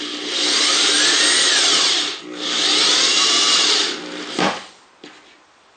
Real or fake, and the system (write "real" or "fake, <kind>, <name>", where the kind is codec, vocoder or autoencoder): real